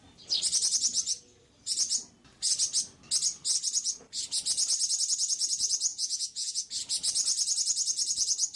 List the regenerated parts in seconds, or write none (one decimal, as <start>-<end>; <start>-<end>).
5.9-6.7

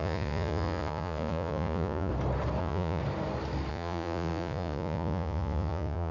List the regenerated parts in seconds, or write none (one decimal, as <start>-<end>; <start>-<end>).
0.0-2.1; 2.6-3.0; 3.7-6.1

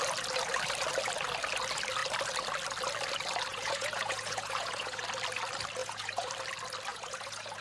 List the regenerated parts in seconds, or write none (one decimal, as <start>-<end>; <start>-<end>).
3.5-5.0; 5.8-6.3; 6.9-7.6

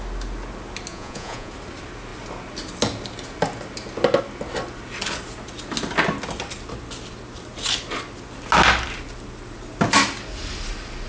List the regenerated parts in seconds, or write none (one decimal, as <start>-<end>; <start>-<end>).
0.9-1.5

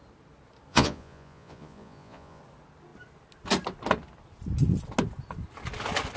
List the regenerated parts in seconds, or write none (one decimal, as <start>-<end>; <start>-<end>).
0.7-2.4

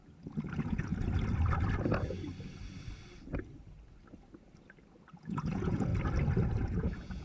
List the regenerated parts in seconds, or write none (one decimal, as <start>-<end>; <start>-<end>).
0.5-0.9; 5.2-5.9; 6.6-7.2

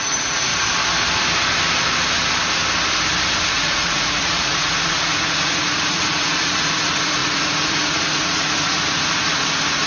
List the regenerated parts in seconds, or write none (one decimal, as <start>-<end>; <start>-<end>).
0.0-0.5; 3.5-9.9